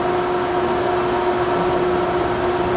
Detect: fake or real real